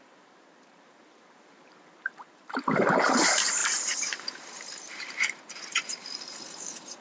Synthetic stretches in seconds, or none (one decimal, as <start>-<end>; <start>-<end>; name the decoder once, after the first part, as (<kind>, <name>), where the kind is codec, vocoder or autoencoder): 0.0-7.0 (vocoder, BigVGAN v2)